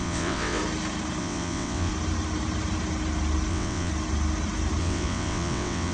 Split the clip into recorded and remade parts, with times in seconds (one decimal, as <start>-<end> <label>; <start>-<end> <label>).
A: 0.0-0.6 remade; 0.6-1.2 recorded; 1.2-1.9 remade; 1.9-3.5 recorded; 3.5-3.9 remade; 3.9-4.8 recorded; 4.8-5.9 remade